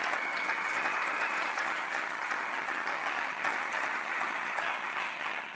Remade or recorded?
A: remade